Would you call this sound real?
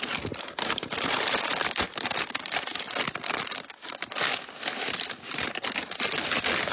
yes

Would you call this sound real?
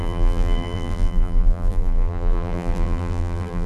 no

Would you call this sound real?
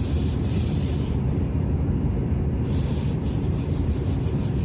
no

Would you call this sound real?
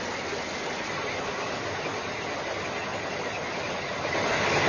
yes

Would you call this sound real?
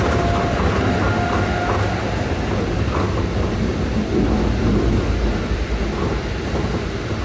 yes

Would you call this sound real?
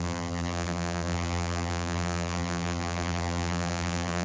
no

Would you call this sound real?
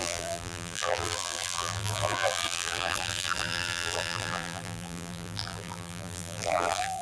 no